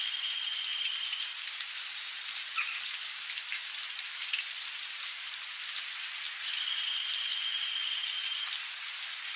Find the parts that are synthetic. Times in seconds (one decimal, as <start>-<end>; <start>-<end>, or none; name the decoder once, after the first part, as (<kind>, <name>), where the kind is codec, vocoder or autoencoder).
0.7-5.4 (vocoder, BigVGAN v2); 7.3-8.5